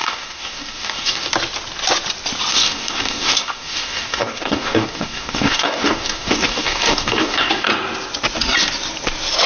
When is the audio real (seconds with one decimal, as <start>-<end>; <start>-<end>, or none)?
1.3-2.5; 7.7-9.5